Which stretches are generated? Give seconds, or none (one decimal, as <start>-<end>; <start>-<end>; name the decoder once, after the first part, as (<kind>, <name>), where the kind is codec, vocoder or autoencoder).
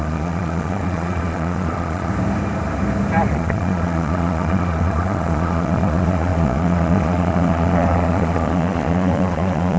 0.0-2.1 (vocoder, Vocos); 3.3-9.8